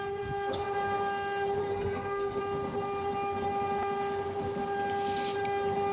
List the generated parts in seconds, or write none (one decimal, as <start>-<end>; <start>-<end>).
1.6-2.4